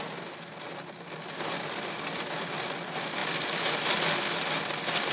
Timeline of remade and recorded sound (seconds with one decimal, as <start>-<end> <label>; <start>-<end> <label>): 0.0-5.1 recorded